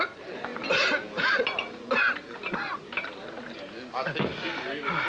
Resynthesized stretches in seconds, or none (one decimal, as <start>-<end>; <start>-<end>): none

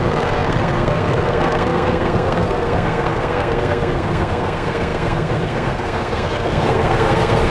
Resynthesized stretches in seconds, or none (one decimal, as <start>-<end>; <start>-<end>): 0.0-7.5

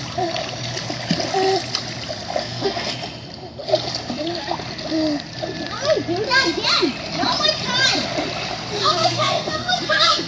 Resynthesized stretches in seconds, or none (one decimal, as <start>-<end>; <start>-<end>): 2.4-2.9; 8.8-10.3

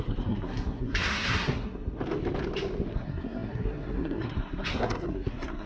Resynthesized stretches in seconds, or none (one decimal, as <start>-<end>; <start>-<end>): 0.0-2.0; 2.9-5.7

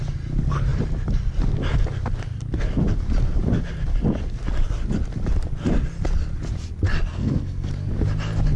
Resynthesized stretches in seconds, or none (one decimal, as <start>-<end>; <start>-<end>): 7.1-7.7

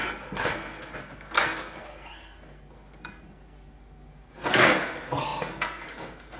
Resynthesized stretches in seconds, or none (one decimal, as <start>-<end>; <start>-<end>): 0.0-6.4

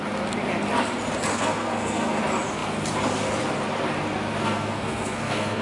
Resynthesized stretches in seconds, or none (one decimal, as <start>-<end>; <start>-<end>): 1.3-2.2; 4.4-5.6